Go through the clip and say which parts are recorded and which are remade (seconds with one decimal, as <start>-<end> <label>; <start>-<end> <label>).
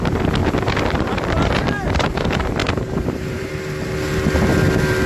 0.0-2.6 recorded; 2.6-3.5 remade; 3.5-5.1 recorded